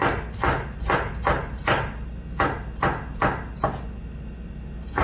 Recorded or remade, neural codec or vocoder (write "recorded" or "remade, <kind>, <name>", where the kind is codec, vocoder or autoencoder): recorded